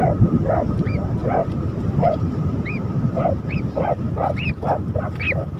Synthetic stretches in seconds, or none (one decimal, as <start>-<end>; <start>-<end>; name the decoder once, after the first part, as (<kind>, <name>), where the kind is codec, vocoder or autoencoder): 1.4-4.5 (vocoder, BigVGAN v2)